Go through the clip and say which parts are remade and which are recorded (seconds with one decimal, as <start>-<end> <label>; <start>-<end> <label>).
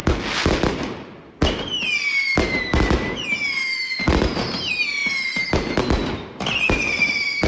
0.0-7.5 recorded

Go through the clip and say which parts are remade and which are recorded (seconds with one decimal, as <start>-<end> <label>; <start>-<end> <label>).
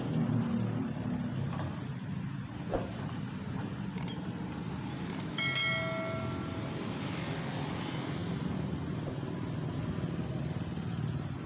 0.0-11.5 recorded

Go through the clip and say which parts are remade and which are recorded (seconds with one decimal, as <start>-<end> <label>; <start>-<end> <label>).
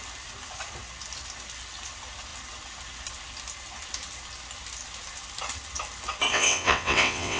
0.0-6.3 recorded; 6.3-7.4 remade